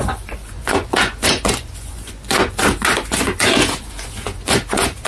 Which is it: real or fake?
fake